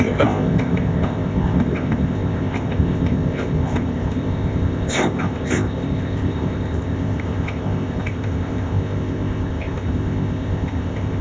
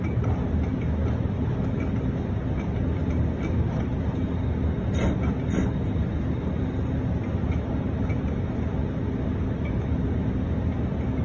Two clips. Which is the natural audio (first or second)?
second